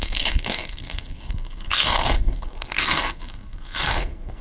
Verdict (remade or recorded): remade